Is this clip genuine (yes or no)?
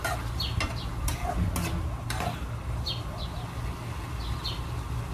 yes